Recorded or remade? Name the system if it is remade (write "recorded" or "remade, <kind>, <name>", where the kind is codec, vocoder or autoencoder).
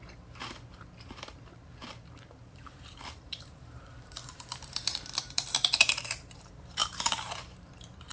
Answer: remade, vocoder, BigVGAN v2